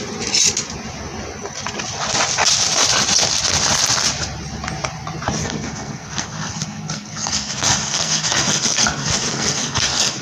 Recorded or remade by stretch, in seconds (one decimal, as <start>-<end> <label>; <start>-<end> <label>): 0.0-5.4 recorded; 5.4-10.2 remade